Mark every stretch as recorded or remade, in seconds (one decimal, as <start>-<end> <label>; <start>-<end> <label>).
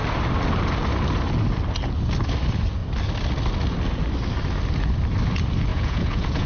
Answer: 0.0-5.7 recorded; 5.7-6.5 remade